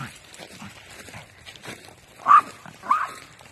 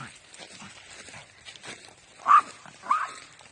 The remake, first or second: first